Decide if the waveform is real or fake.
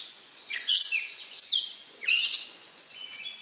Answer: fake